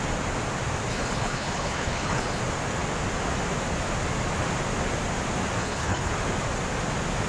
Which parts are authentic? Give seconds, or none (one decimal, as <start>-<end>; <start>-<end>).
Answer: 0.0-0.9; 2.4-5.6; 6.1-7.3